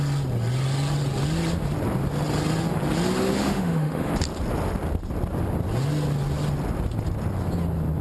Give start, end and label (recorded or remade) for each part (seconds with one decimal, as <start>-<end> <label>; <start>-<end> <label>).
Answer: 0.0-3.4 recorded; 3.4-4.1 remade; 4.1-8.0 recorded